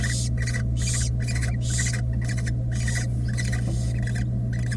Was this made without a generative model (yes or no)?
yes